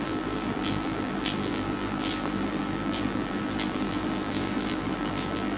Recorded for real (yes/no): no